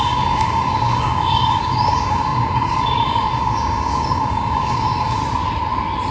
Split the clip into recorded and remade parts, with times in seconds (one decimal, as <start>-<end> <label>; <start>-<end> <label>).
0.0-5.2 remade; 5.2-6.1 recorded